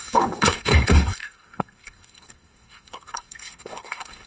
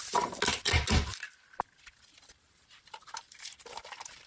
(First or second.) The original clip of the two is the second